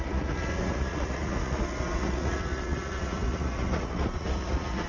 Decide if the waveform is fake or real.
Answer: fake